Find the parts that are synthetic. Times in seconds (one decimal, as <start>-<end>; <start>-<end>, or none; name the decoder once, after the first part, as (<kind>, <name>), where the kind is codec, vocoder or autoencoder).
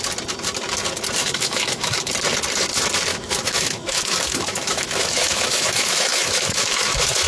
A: 1.2-2.1 (autoencoder, DAC-VAE); 3.1-7.3